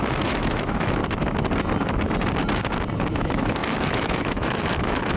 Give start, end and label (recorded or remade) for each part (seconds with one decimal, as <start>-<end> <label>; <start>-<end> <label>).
0.0-1.0 remade; 1.0-3.1 recorded; 3.1-5.2 remade